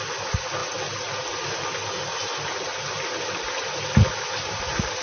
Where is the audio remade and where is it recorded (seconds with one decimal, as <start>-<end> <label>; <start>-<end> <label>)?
0.0-5.0 recorded